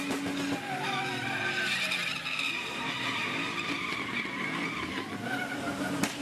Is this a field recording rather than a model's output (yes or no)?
yes